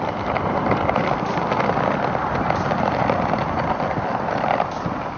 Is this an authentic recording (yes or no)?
yes